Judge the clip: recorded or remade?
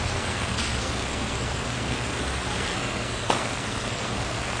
remade